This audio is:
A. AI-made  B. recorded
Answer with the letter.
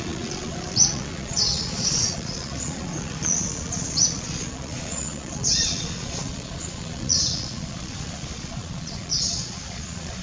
A